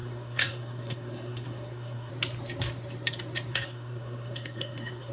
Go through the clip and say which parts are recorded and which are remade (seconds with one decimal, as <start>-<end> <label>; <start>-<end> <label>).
0.0-2.1 remade; 2.1-3.5 recorded; 3.5-5.1 remade